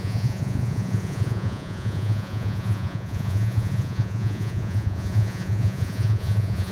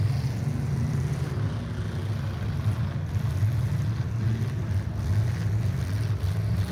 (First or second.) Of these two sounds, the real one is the second